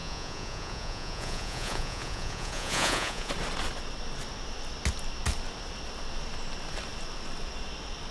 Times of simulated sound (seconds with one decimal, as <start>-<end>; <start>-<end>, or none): 0.0-3.3